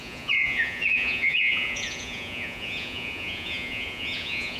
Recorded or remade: remade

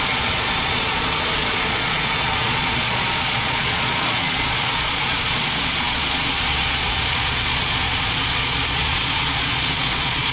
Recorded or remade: remade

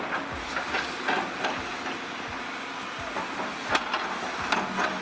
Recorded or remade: recorded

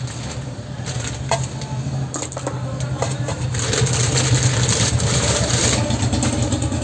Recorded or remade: recorded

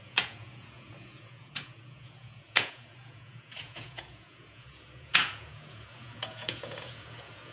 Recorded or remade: remade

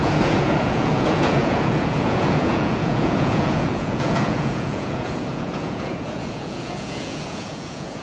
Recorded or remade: remade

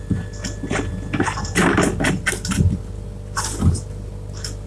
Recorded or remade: recorded